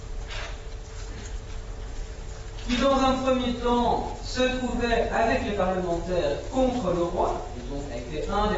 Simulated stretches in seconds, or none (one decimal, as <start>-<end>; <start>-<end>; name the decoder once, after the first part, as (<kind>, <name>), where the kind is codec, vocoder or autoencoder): 6.3-7.8 (autoencoder, DAC-VAE)